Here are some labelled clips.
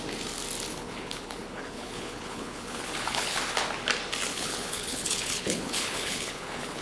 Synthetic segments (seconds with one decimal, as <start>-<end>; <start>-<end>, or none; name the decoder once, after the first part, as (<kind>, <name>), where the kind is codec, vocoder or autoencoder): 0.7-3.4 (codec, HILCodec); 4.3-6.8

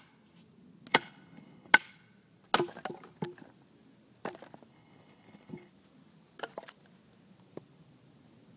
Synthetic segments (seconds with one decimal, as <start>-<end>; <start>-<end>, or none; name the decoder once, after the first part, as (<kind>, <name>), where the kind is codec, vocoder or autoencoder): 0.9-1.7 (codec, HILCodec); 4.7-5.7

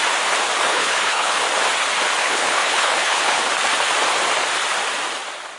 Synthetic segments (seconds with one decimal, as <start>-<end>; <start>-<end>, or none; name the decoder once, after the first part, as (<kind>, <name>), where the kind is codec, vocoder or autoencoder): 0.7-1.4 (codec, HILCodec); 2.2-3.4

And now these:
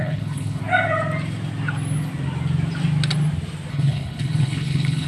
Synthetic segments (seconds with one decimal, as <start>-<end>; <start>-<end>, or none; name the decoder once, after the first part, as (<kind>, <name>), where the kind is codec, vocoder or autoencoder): 0.0-0.6 (codec, HILCodec); 3.7-5.1